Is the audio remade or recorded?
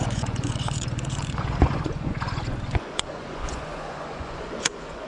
remade